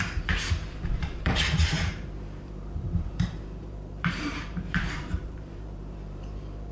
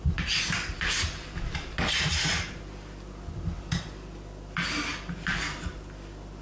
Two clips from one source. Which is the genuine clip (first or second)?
second